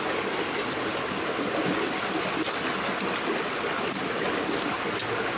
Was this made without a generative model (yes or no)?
yes